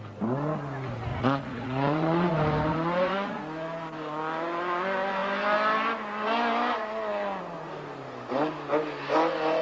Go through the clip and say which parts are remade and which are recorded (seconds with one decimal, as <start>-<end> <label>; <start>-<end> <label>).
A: 0.0-1.1 recorded; 1.1-2.3 remade; 2.3-2.7 recorded; 2.7-3.4 remade; 3.4-9.6 recorded